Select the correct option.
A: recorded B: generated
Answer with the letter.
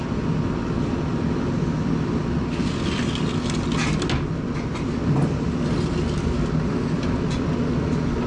A